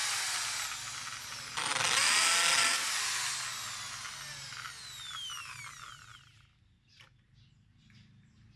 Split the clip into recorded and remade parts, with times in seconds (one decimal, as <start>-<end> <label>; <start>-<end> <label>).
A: 0.0-8.6 recorded